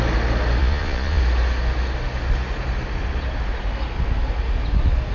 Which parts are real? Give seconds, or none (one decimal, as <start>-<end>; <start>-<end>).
0.0-0.6; 1.2-5.1